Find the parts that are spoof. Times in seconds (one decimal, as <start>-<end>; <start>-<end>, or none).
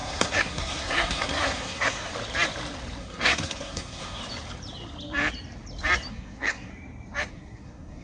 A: 0.0-2.1; 3.0-4.2; 6.1-6.7; 7.3-8.0